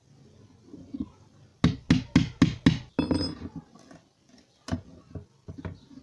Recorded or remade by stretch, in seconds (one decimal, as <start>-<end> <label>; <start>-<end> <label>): 0.0-6.0 recorded